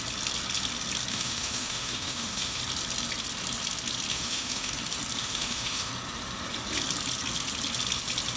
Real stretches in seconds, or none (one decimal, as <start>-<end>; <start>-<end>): 0.0-1.1; 2.6-4.1; 4.7-5.2; 5.9-8.4